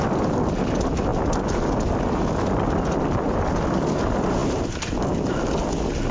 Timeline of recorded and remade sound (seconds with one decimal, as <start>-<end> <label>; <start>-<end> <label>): 0.0-6.1 recorded